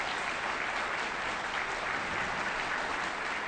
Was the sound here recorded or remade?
recorded